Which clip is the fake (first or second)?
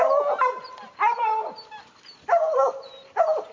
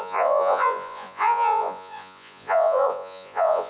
second